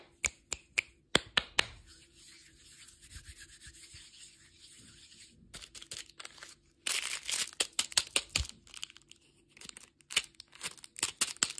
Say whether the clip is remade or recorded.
recorded